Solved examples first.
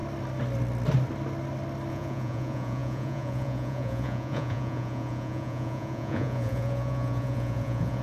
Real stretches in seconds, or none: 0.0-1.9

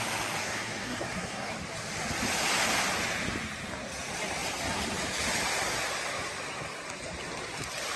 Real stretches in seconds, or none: 0.0-0.4; 1.5-8.0

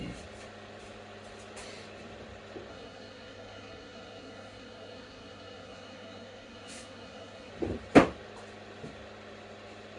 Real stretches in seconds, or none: 0.0-2.7; 7.5-10.0